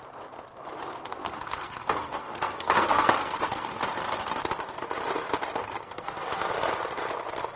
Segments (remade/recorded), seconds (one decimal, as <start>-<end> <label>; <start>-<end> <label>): 0.0-1.0 recorded; 1.0-3.8 remade; 3.8-5.6 recorded; 5.6-6.1 remade; 6.1-7.6 recorded